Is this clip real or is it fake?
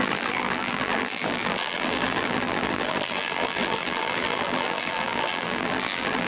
fake